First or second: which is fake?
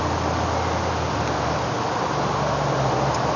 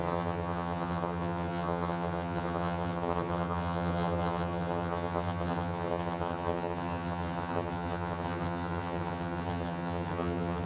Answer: second